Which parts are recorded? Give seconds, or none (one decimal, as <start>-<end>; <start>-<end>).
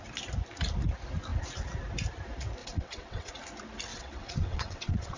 0.0-2.6; 3.3-3.9